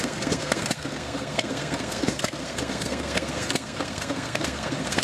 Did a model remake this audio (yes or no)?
yes